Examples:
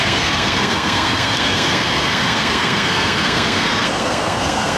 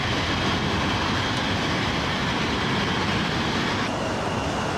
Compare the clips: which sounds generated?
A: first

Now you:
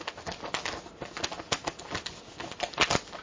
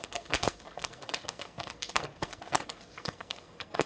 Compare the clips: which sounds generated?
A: second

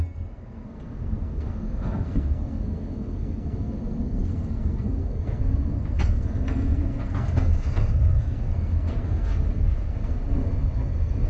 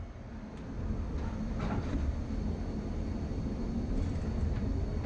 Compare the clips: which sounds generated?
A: first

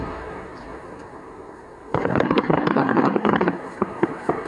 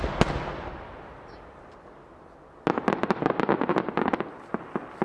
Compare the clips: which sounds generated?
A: first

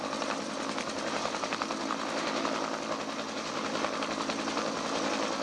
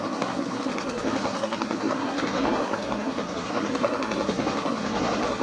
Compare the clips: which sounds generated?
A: second